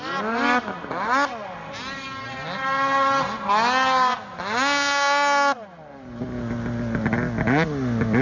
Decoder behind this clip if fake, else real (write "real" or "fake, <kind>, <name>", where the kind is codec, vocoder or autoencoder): real